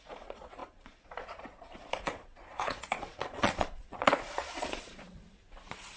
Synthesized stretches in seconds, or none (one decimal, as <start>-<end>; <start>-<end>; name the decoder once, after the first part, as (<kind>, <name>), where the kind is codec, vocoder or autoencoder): 0.0-6.0 (vocoder, Vocos)